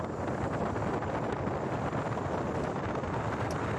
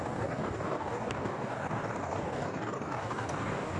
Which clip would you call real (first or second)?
first